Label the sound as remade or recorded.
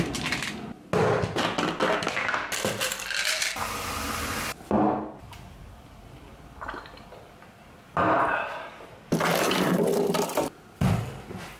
recorded